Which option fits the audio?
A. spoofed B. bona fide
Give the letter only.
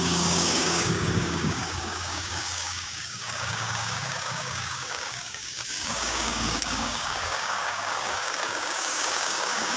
A